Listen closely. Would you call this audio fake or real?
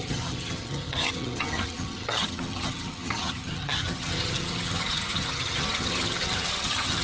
fake